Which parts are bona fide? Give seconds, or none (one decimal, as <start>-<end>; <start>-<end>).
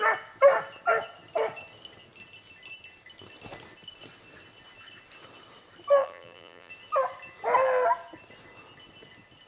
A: 0.0-6.0; 6.7-9.5